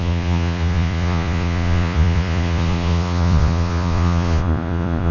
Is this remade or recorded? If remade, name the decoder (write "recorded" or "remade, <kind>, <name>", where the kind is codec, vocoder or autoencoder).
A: remade, vocoder, Vocos